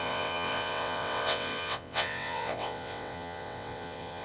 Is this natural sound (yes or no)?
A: no